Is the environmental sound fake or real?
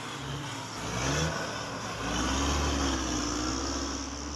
real